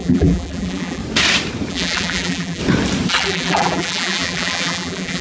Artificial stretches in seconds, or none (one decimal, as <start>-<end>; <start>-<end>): 0.0-1.0; 1.7-2.6; 3.1-5.2